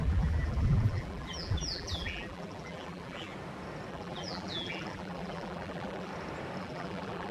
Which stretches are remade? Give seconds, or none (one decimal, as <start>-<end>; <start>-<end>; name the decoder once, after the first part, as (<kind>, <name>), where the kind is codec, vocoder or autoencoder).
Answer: 0.0-3.3 (vocoder, BigVGAN v2); 3.9-6.1; 6.6-7.3